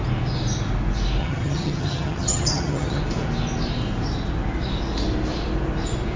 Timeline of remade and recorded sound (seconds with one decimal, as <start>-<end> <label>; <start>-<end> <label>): 0.0-1.2 recorded; 1.2-3.0 remade; 3.0-6.2 recorded